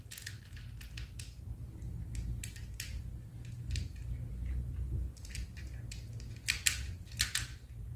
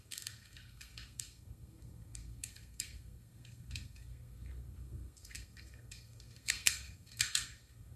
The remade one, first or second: second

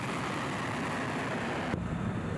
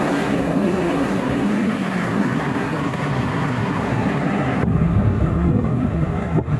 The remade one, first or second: second